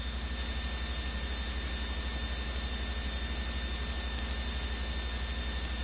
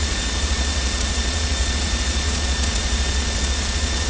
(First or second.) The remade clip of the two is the second